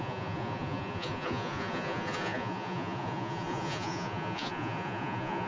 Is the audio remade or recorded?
remade